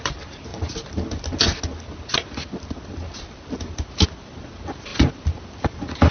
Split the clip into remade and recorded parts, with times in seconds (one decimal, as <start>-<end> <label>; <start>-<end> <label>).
0.0-6.1 recorded